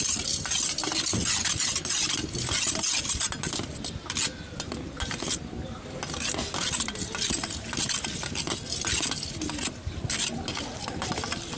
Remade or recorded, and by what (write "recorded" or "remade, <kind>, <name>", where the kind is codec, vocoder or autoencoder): recorded